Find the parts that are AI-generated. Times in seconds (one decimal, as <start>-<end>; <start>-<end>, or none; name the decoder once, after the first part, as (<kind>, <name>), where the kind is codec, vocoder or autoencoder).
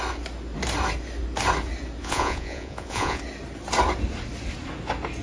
2.0-3.2 (vocoder, Vocos)